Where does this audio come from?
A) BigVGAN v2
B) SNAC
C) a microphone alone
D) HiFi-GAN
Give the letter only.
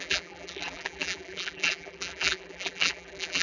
A